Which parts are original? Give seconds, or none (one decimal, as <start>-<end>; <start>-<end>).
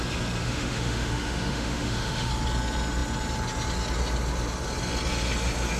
0.0-0.4; 2.3-5.8